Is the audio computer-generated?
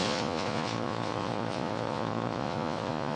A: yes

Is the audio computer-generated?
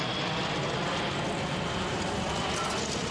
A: no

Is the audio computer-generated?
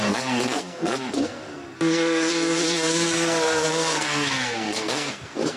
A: yes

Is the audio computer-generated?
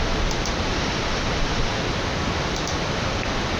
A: no